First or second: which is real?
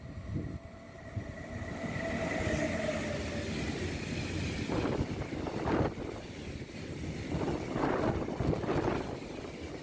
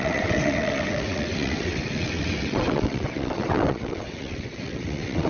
first